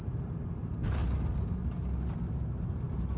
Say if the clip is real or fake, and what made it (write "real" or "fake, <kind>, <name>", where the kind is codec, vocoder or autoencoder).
real